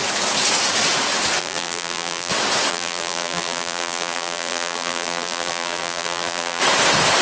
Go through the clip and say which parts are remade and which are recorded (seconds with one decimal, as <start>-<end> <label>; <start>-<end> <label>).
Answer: 0.0-1.4 recorded; 1.4-2.3 remade; 2.3-2.7 recorded; 2.7-6.6 remade; 6.6-7.2 recorded